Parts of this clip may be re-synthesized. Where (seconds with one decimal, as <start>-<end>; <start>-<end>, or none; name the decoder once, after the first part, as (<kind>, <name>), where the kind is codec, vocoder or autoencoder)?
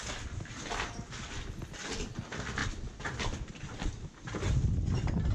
none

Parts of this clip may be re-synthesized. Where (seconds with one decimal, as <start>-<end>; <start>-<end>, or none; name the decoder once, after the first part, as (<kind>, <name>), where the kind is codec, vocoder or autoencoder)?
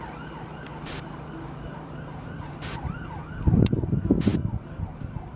0.7-3.6 (vocoder, BigVGAN v2); 4.3-5.4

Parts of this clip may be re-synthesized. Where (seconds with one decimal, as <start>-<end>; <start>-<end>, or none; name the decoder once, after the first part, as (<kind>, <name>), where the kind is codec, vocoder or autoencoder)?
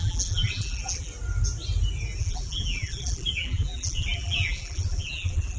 0.0-1.1 (vocoder, BigVGAN v2); 2.2-5.6